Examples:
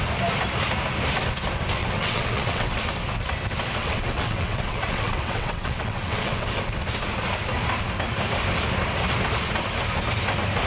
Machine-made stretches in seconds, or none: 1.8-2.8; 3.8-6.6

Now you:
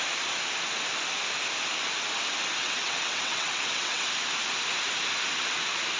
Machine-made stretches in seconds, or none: 2.6-4.1

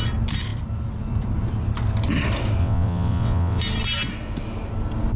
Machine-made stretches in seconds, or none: 2.6-3.6

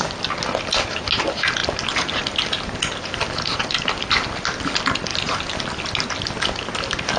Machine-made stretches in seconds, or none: none